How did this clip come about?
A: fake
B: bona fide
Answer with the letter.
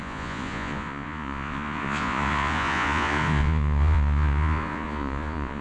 A